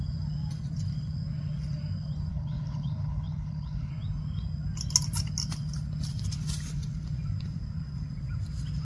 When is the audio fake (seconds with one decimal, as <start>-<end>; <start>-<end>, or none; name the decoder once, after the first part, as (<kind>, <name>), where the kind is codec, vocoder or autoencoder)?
2.3-3.9 (codec, HILCodec)